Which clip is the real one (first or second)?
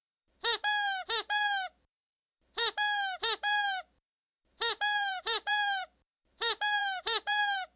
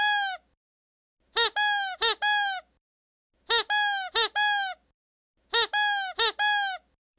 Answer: second